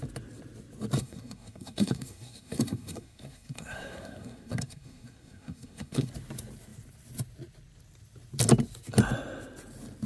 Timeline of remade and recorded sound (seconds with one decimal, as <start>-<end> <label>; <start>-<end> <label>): 0.0-1.0 recorded; 1.0-6.1 remade; 6.1-10.1 recorded